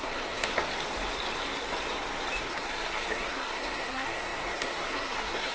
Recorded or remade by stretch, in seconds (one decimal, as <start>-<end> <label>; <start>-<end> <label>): 0.0-0.5 remade; 0.5-2.4 recorded; 2.4-5.5 remade

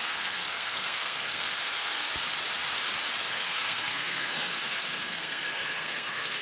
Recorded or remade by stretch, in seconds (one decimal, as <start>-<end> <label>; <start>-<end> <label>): 0.0-2.1 remade; 2.1-3.3 recorded; 3.3-6.4 remade

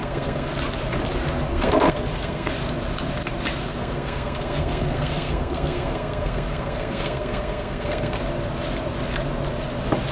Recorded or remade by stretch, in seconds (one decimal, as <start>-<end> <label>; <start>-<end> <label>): 0.0-0.5 remade; 0.5-1.5 recorded; 1.5-2.5 remade; 2.5-3.6 recorded; 3.6-8.2 remade; 8.2-10.1 recorded

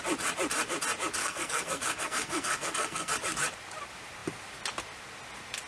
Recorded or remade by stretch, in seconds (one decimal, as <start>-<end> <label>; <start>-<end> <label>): 0.0-1.2 recorded; 1.2-3.1 remade; 3.1-5.7 recorded

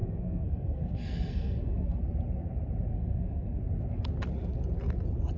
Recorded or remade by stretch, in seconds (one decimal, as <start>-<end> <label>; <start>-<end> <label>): 0.0-2.0 remade; 2.0-2.9 recorded; 2.9-3.6 remade; 3.6-5.4 recorded

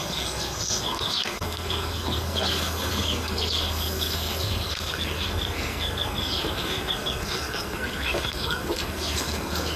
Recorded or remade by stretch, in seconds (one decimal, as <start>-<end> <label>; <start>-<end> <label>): 0.0-9.8 remade

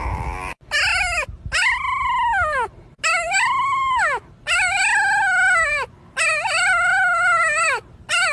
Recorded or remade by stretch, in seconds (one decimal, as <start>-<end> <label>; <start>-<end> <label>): 0.0-8.3 recorded

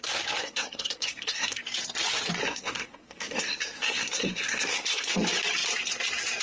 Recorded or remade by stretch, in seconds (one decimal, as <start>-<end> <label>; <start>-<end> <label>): 0.0-0.4 recorded; 0.4-1.6 remade; 1.6-2.4 recorded; 2.4-5.1 remade; 5.1-6.4 recorded